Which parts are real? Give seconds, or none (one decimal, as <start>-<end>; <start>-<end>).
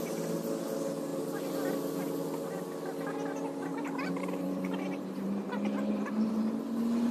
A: 0.0-3.7; 6.3-7.1